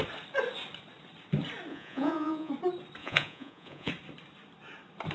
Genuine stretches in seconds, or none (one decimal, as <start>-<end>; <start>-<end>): 0.0-1.7; 2.5-3.0; 3.9-5.1